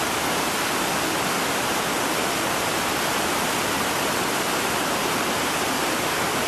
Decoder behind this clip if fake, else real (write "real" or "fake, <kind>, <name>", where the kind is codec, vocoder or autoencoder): real